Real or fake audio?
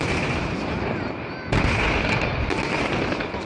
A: real